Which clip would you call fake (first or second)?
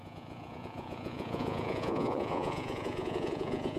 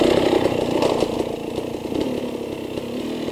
first